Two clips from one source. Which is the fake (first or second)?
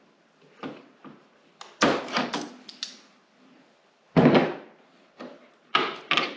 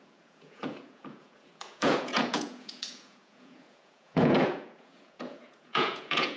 second